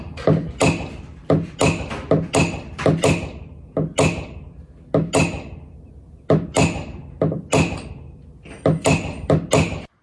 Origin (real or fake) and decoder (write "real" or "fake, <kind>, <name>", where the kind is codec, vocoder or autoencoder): real